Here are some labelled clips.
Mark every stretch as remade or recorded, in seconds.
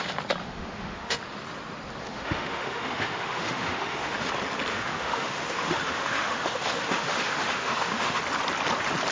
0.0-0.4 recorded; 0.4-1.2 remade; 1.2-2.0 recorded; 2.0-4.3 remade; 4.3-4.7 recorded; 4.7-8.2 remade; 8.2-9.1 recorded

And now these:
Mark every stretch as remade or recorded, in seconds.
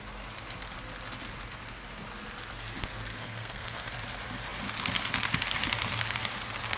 0.0-3.1 recorded; 3.1-3.9 remade; 3.9-6.8 recorded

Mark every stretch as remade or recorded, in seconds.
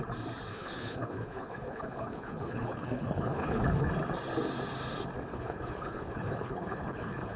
0.0-0.5 recorded; 0.5-3.9 remade; 3.9-5.3 recorded; 5.3-7.4 remade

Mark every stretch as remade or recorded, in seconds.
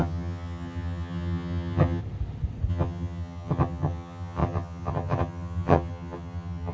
0.0-2.0 remade; 2.0-2.7 recorded; 2.7-6.7 remade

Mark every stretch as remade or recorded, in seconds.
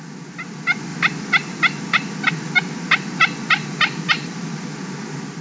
0.0-5.4 recorded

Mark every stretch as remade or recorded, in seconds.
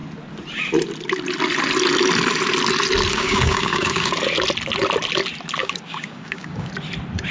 0.0-3.1 recorded; 3.1-4.1 remade; 4.1-5.6 recorded; 5.6-6.7 remade; 6.7-7.3 recorded